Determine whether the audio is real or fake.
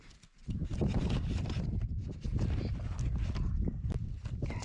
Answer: real